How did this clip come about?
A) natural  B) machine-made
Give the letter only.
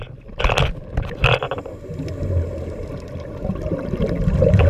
A